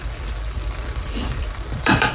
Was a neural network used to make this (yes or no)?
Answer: yes